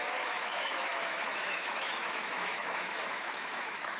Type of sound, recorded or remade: remade